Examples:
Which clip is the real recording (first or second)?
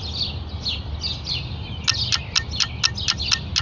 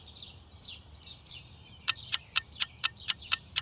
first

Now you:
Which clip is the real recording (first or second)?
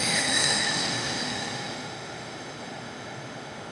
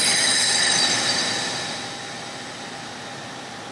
second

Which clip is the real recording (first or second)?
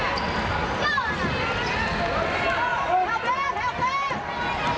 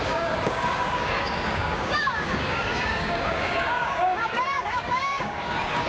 first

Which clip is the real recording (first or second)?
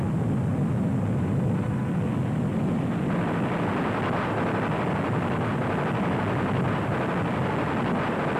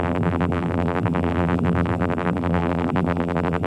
first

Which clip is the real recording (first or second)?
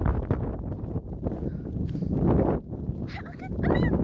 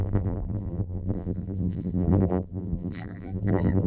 first